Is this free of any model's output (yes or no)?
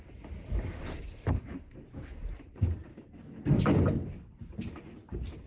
yes